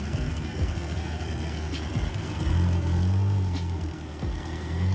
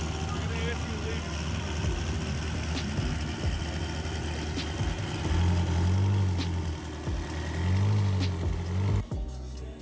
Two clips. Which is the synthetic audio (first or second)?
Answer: first